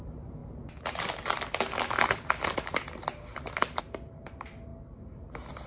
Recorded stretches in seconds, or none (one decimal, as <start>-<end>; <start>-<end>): 0.4-3.8; 4.7-5.3